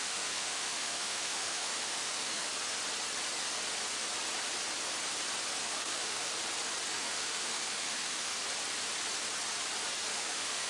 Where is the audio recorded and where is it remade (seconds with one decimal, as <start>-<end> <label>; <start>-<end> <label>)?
0.0-2.5 remade; 2.5-5.6 recorded; 5.6-6.3 remade; 6.3-6.9 recorded; 6.9-8.3 remade; 8.3-10.1 recorded; 10.1-10.7 remade